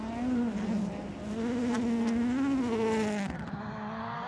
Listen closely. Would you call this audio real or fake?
real